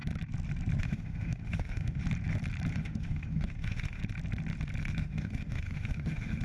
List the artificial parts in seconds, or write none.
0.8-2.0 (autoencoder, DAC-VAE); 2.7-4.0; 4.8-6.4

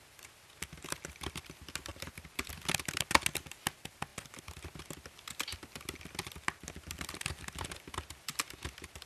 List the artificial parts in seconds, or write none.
1.9-2.5 (vocoder, BigVGAN v2)

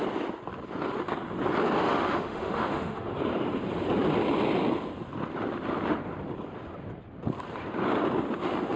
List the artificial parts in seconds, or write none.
1.8-3.1 (autoencoder, DAC-VAE)

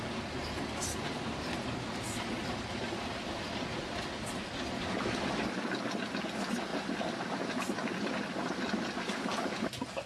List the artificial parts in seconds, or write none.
1.1-3.3 (vocoder, BigVGAN v2); 3.7-6.2; 6.7-8.1

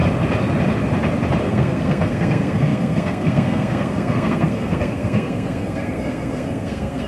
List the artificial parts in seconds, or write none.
1.4-7.1 (codec, SNAC)